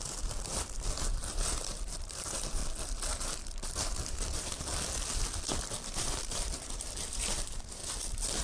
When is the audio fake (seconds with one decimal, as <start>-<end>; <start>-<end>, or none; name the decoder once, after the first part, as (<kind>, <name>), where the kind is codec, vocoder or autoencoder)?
0.0-2.6 (vocoder, BigVGAN v2); 3.1-4.7; 6.0-7.8